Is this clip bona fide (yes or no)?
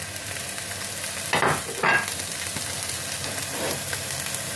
yes